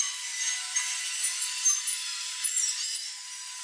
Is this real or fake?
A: real